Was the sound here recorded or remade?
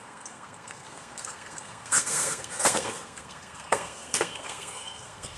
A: remade